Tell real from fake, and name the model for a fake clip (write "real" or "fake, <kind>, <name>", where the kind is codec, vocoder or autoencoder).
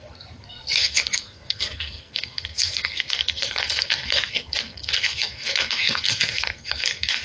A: fake, codec, SNAC